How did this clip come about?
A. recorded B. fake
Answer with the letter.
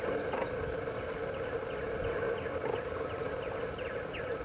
A